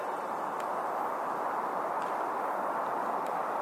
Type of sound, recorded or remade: remade